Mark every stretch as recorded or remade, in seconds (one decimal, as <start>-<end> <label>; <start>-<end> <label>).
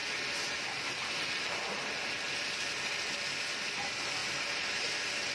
0.0-5.3 recorded